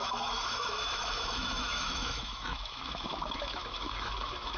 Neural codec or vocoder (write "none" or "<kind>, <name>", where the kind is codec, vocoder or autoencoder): autoencoder, DAC-VAE